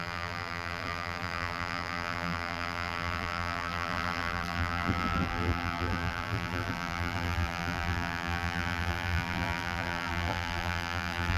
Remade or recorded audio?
remade